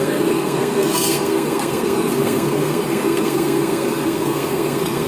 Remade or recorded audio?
remade